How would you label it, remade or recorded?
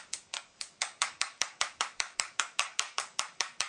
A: remade